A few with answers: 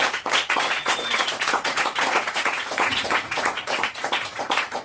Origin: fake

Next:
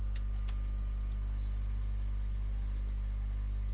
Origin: real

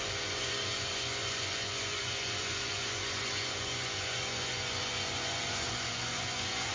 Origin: fake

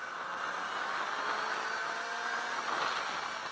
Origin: real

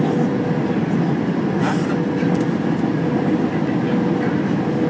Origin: real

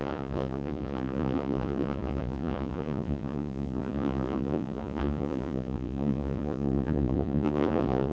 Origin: fake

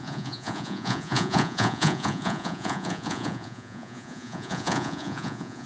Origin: fake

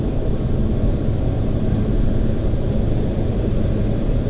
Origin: real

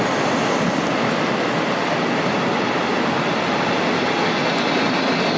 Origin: real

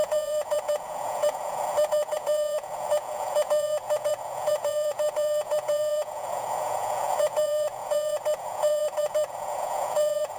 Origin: fake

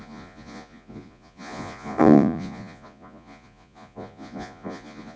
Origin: fake